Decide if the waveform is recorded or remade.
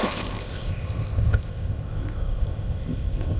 remade